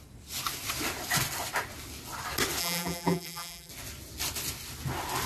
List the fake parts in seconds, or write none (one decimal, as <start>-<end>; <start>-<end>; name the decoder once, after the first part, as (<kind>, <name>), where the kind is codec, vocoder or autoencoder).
2.6-3.7 (vocoder, BigVGAN v2)